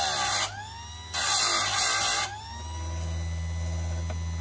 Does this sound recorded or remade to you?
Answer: recorded